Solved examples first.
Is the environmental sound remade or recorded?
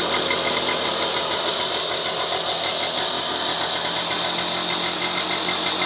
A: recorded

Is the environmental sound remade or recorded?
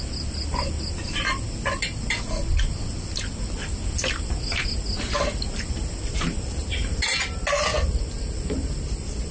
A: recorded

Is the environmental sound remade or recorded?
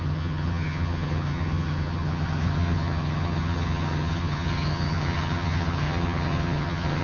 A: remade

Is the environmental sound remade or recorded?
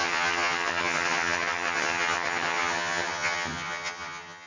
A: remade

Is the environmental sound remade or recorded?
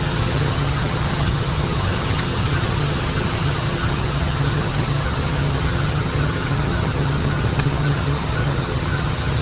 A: remade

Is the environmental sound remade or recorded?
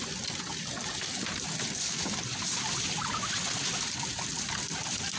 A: recorded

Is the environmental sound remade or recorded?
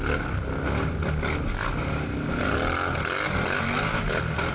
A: recorded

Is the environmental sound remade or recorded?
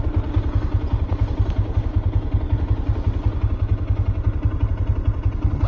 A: recorded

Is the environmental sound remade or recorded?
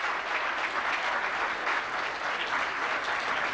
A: recorded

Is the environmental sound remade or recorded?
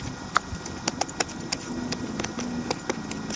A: recorded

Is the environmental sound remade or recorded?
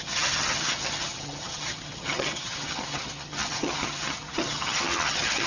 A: remade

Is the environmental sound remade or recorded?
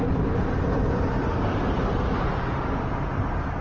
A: recorded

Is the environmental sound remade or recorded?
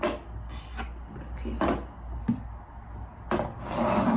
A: recorded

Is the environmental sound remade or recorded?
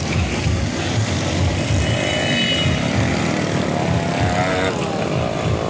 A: recorded